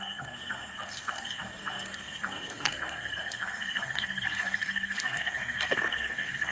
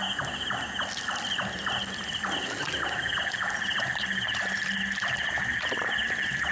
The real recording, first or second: second